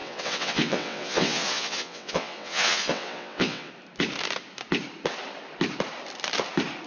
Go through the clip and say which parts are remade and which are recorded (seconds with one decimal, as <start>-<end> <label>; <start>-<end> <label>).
0.0-3.7 remade; 3.7-6.9 recorded